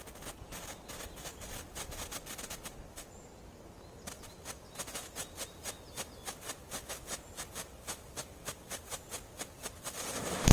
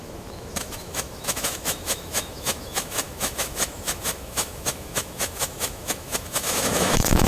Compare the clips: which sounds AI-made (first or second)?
second